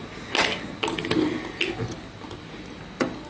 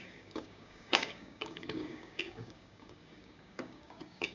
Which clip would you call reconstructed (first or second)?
second